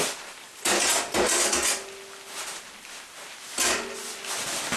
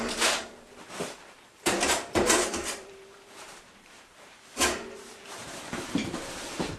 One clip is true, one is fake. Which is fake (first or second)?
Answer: second